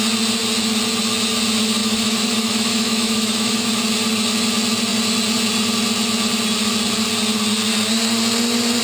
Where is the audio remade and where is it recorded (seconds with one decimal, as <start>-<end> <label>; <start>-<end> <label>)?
0.0-1.8 recorded; 1.8-3.8 remade; 3.8-8.8 recorded